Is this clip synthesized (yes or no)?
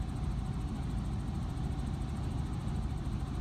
no